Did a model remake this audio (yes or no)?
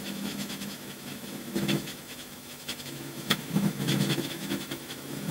yes